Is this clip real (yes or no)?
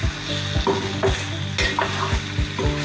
yes